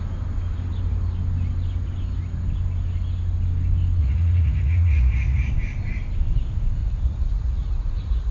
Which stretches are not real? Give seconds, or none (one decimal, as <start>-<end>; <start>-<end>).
4.0-5.5; 6.8-8.3